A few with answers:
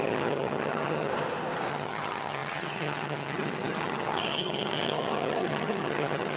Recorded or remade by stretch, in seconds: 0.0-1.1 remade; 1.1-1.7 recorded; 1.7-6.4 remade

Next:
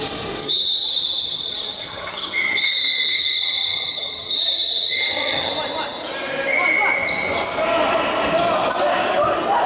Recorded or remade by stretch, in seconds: 0.0-0.4 recorded; 0.4-2.7 remade; 2.7-3.1 recorded; 3.1-5.5 remade; 5.5-9.7 recorded

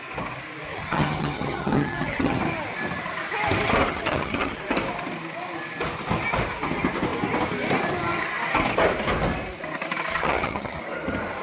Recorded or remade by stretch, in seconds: 0.0-0.7 recorded; 0.7-2.4 remade; 2.4-3.9 recorded; 3.9-4.6 remade; 4.6-10.1 recorded; 10.1-10.8 remade; 10.8-11.4 recorded

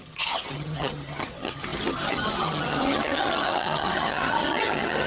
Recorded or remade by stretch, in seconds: 0.0-5.1 remade

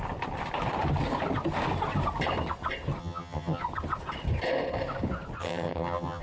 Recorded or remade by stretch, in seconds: 0.0-3.0 recorded; 3.0-3.6 remade; 3.6-5.4 recorded; 5.4-6.2 remade

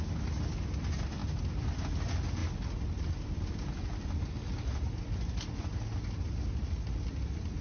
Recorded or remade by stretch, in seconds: 0.0-7.6 recorded

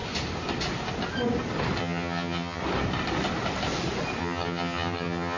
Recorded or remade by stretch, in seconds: 0.0-1.8 recorded; 1.8-2.6 remade; 2.6-4.2 recorded; 4.2-5.4 remade